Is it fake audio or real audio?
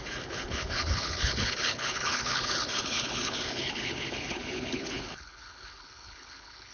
fake